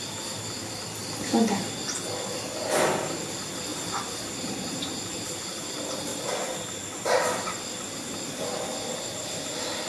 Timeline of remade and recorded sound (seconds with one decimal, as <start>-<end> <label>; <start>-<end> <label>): 0.0-9.9 recorded